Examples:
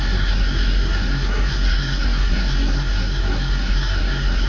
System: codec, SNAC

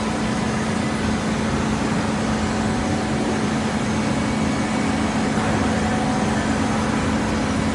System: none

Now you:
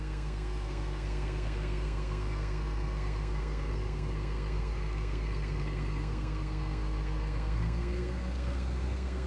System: codec, SNAC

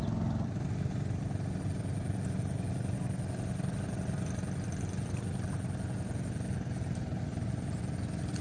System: none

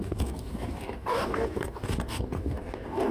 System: codec, DAC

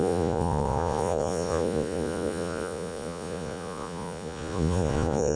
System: vocoder, Vocos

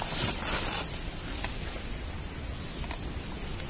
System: none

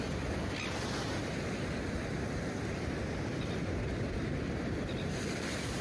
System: none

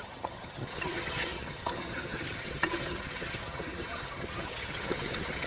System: vocoder, HiFi-GAN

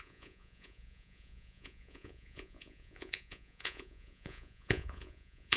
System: vocoder, Vocos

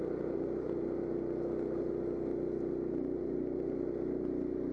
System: none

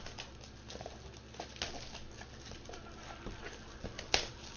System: none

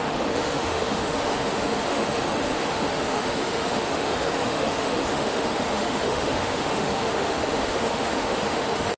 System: autoencoder, DAC-VAE